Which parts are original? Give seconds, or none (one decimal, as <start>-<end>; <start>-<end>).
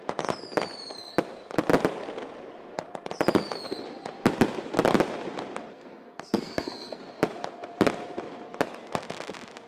0.0-5.7; 7.0-9.7